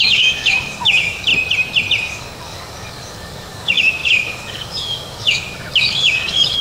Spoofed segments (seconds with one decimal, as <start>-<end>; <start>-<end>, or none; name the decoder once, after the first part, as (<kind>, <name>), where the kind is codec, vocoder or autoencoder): 0.0-1.3 (codec, DAC); 2.0-6.6